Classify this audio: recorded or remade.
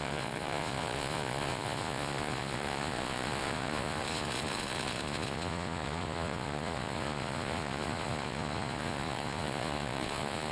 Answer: remade